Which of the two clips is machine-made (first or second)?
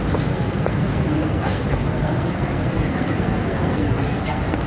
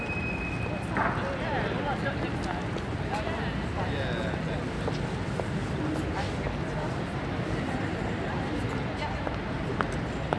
first